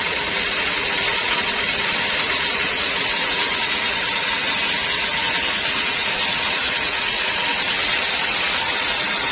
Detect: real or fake fake